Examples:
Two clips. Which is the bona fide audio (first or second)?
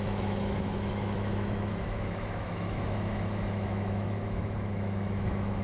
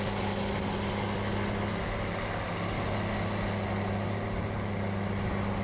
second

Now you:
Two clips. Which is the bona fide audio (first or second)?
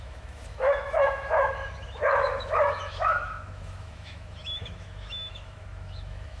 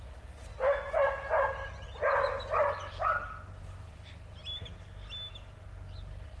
second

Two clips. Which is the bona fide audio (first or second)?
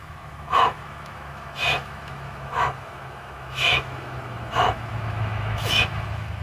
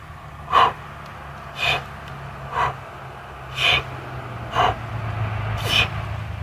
second